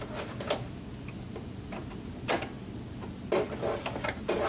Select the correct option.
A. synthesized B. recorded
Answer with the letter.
B